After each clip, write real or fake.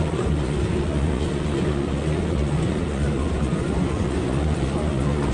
fake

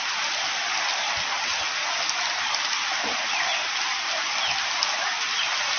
real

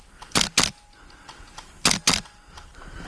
real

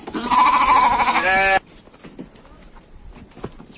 real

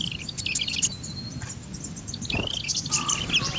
real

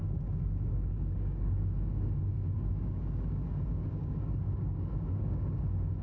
fake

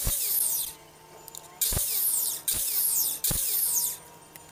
real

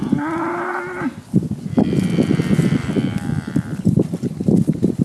real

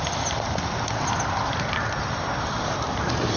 real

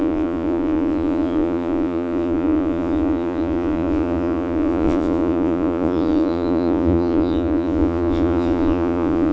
fake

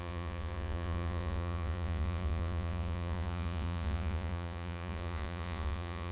fake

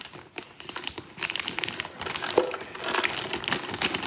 real